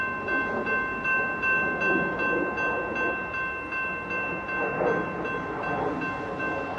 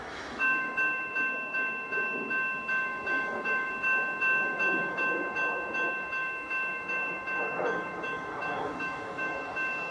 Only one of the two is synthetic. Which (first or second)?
second